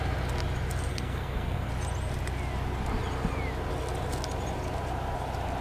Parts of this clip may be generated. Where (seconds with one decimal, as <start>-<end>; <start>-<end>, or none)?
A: 0.9-1.7

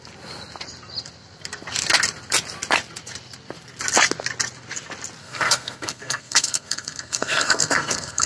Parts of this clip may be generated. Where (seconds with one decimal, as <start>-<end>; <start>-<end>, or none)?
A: 5.2-8.3